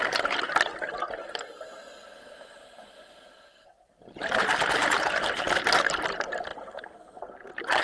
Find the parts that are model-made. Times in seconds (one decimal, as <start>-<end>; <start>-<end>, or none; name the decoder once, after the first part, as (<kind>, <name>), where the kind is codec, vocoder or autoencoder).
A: 6.5-7.0 (vocoder, BigVGAN v2)